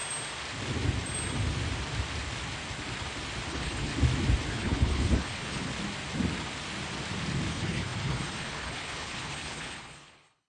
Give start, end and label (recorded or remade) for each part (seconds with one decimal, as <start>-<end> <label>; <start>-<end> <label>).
0.0-3.5 recorded; 3.5-3.9 remade; 3.9-4.5 recorded; 4.5-5.7 remade; 5.7-7.5 recorded; 7.5-10.5 remade